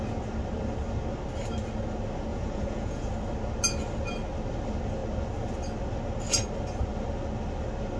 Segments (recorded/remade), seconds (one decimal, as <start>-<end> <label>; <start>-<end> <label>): 0.0-2.3 recorded; 2.3-3.1 remade; 3.1-8.0 recorded

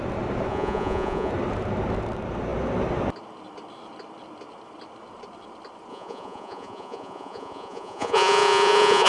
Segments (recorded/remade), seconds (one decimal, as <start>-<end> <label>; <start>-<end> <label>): 0.0-0.5 recorded; 0.5-1.3 remade; 1.3-5.9 recorded; 5.9-9.1 remade